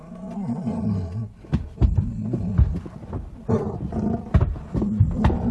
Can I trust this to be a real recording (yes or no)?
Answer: yes